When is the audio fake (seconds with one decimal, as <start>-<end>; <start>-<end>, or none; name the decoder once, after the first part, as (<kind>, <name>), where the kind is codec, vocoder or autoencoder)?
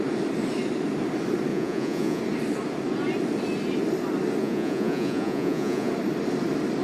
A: 1.5-2.2 (vocoder, Vocos); 4.4-5.9